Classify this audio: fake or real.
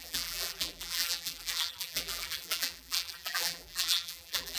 fake